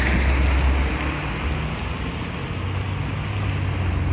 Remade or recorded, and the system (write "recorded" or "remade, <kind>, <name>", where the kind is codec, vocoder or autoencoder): recorded